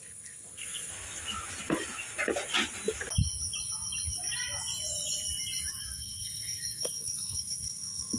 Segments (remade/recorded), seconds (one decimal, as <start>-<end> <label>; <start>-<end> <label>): 0.0-0.9 remade; 0.9-5.8 recorded; 5.8-8.2 remade